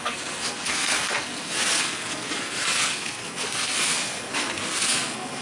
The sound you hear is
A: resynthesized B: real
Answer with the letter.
A